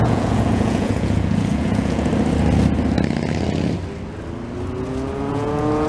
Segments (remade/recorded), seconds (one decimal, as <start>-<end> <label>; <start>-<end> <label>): 0.0-2.1 remade; 2.1-5.3 recorded; 5.3-5.9 remade